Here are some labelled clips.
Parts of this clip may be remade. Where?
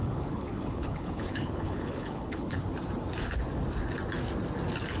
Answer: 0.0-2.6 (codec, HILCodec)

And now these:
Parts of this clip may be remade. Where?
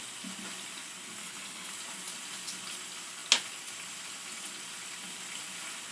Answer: 1.2-1.7 (codec, HILCodec)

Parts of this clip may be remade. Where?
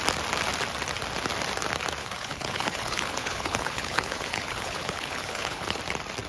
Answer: 2.0-5.8 (codec, HILCodec)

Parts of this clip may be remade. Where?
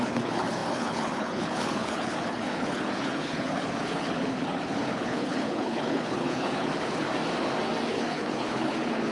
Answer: 0.0-7.1 (codec, HILCodec); 7.9-9.1